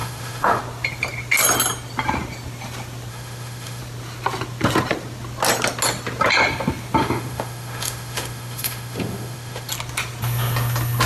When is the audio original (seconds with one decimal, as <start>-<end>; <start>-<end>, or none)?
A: 0.6-3.1; 3.8-7.0; 9.7-11.1